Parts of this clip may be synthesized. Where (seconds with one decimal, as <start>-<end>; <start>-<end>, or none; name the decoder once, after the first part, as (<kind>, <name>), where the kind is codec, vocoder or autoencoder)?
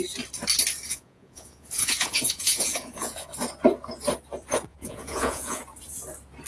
0.9-3.3 (vocoder, Vocos); 4.7-5.6